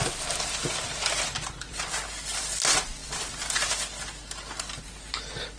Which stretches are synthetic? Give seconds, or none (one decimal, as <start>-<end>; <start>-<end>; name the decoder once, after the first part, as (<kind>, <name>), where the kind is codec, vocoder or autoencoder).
0.6-1.8 (vocoder, BigVGAN v2)